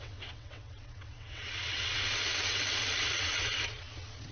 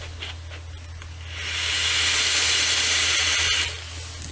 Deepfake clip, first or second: first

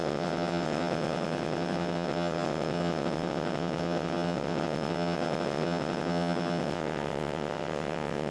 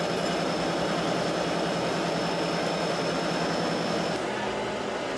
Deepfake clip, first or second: first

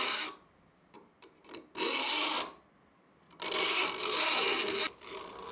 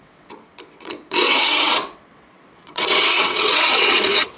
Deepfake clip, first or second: second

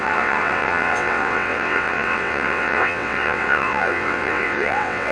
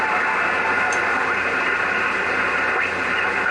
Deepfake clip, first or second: first